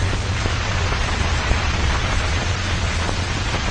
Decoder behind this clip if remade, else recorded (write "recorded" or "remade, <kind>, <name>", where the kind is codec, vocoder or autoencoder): remade, vocoder, Vocos